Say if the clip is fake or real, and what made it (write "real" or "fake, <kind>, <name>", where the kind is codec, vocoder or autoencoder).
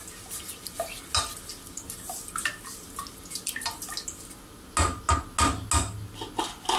real